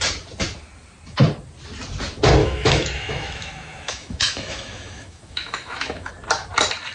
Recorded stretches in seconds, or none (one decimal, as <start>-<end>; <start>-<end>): 0.0-2.4; 6.1-6.9